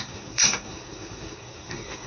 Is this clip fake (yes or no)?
yes